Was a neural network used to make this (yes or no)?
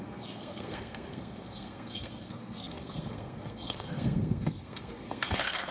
yes